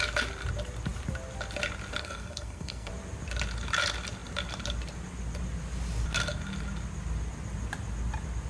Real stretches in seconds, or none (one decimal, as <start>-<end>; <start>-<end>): 0.0-2.0; 2.9-8.5